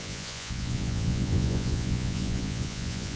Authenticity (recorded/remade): remade